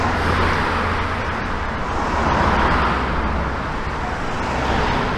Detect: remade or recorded recorded